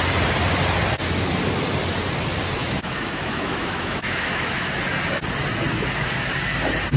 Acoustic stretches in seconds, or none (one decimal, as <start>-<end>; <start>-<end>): 0.0-2.6; 4.7-7.0